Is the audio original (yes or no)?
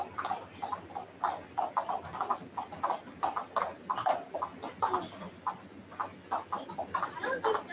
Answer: yes